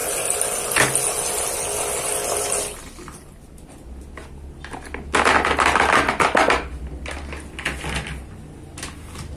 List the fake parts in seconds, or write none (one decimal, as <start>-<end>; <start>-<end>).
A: none